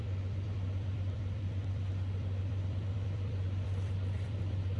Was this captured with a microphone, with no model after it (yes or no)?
no